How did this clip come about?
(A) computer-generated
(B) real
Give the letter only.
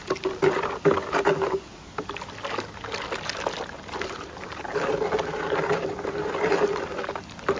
B